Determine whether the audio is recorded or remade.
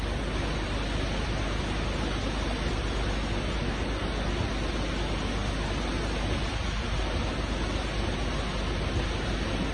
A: recorded